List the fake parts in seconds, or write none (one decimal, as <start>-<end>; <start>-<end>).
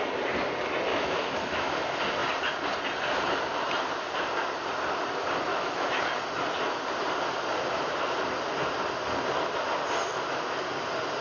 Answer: 0.9-1.7; 5.5-6.0